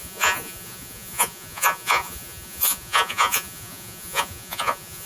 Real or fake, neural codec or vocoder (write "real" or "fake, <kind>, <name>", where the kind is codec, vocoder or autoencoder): fake, vocoder, Vocos